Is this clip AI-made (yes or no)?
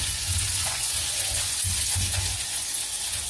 yes